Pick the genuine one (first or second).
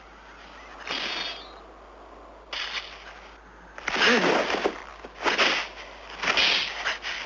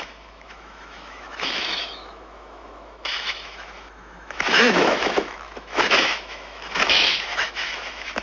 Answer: first